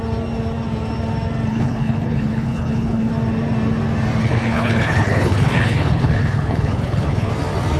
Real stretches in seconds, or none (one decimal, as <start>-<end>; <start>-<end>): 0.0-1.5; 3.1-4.2; 7.3-7.8